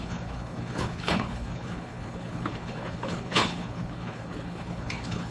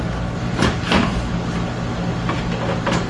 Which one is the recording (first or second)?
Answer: second